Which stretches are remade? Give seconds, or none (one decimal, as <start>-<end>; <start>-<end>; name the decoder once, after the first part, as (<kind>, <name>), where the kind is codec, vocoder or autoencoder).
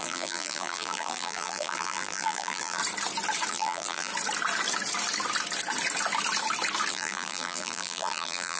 0.0-2.8 (vocoder, BigVGAN v2); 3.5-4.1; 6.9-8.6